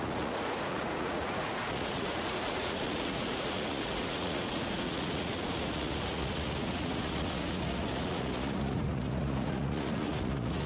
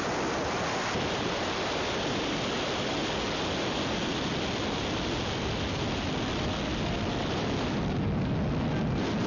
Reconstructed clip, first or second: first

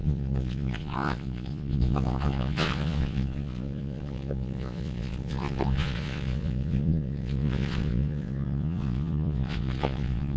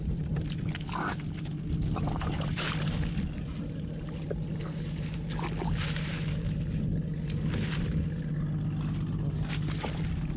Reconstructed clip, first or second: first